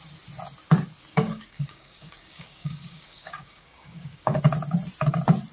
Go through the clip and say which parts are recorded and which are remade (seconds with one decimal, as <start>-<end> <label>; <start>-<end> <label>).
0.0-1.1 recorded; 1.1-4.4 remade; 4.4-5.5 recorded